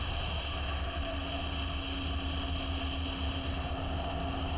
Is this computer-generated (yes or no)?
no